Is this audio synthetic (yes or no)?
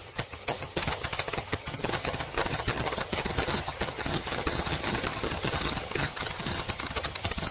yes